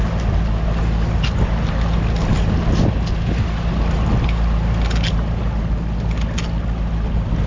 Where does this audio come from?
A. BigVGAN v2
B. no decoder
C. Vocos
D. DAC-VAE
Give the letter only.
B